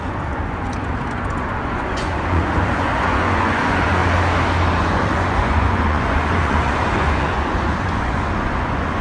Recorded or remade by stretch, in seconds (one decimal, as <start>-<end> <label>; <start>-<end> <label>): 0.0-4.0 remade; 4.0-4.8 recorded; 4.8-9.0 remade